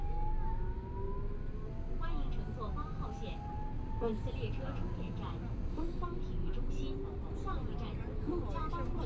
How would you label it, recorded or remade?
recorded